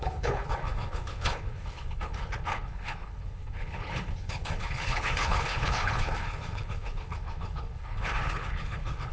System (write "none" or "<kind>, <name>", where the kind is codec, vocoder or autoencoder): codec, HILCodec